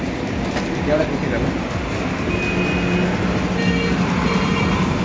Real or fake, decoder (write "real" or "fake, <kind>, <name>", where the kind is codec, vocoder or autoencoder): real